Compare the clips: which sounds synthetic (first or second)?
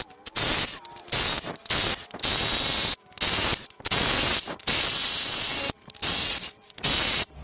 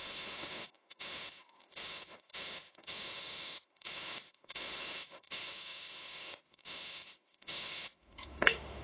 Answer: second